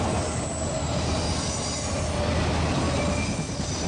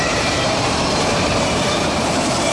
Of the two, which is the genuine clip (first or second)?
first